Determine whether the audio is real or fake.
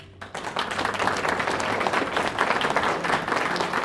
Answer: real